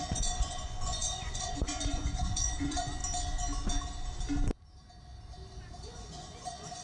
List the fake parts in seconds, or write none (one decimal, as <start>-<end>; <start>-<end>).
0.0-3.0; 5.8-6.8